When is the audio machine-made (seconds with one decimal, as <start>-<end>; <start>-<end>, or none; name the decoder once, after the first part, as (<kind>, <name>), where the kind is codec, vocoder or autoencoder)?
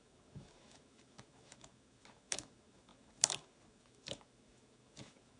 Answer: 0.0-5.4 (autoencoder, DAC-VAE)